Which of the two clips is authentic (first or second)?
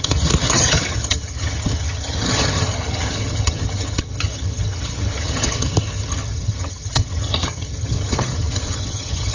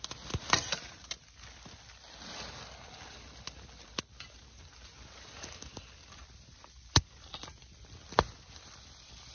second